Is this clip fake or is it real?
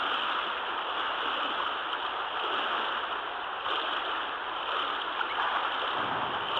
real